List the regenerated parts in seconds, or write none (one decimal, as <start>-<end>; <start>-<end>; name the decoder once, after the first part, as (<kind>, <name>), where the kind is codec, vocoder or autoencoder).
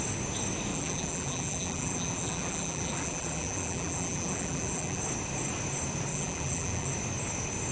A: 0.7-5.0 (vocoder, BigVGAN v2); 6.1-6.9